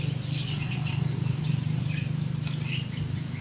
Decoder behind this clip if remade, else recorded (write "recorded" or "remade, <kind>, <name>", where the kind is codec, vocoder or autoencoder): recorded